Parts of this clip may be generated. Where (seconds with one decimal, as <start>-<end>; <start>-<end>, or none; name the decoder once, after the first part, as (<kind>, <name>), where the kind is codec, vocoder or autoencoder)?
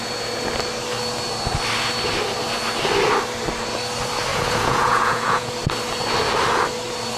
4.3-5.5 (vocoder, Vocos)